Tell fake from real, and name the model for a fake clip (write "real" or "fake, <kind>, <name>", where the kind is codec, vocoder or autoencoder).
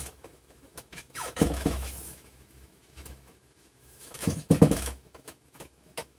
fake, autoencoder, DAC-VAE